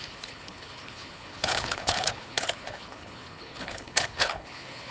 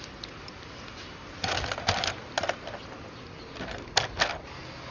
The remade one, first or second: first